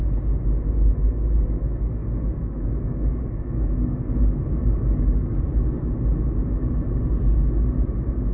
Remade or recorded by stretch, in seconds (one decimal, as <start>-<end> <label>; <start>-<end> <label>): 0.0-2.0 recorded; 2.0-4.1 remade; 4.1-4.6 recorded; 4.6-5.4 remade; 5.4-8.3 recorded